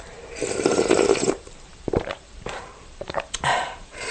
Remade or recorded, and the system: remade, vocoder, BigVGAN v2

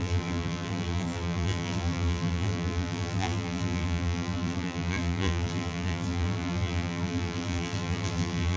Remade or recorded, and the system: remade, vocoder, BigVGAN v2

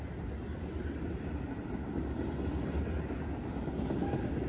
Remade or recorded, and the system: recorded